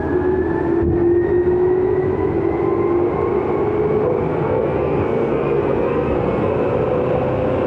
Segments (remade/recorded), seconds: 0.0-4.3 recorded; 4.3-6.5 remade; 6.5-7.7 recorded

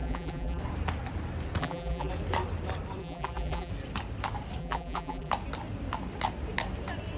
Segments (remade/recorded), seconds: 0.0-0.6 remade; 0.6-1.6 recorded; 1.6-2.1 remade; 2.1-3.0 recorded; 3.0-3.7 remade; 3.7-4.6 recorded; 4.6-5.3 remade; 5.3-7.2 recorded

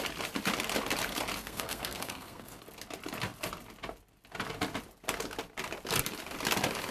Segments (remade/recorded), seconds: 0.0-1.4 recorded; 1.4-2.6 remade; 2.6-6.9 recorded

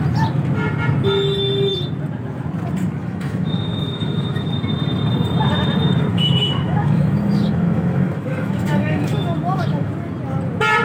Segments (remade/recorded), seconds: 0.0-3.0 recorded; 3.0-4.5 remade; 4.5-6.1 recorded; 6.1-9.9 remade; 9.9-10.8 recorded

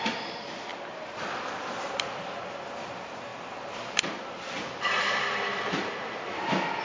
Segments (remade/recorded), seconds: 0.0-6.8 recorded

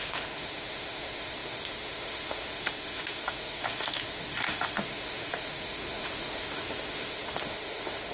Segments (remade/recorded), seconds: 0.0-8.1 remade